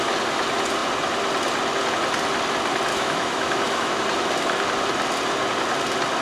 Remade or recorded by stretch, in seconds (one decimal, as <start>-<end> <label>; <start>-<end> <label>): 0.0-2.9 recorded; 2.9-4.0 remade; 4.0-6.2 recorded